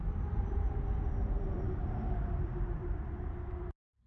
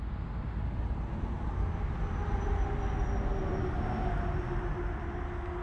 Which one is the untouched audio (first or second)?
second